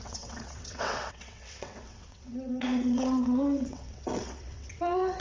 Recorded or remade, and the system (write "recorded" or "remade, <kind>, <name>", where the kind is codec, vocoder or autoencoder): remade, vocoder, WaveNeXt